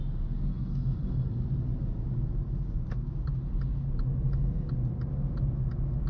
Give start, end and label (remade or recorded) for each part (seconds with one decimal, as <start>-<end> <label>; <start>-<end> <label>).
0.0-0.5 recorded; 0.5-1.3 remade; 1.3-6.1 recorded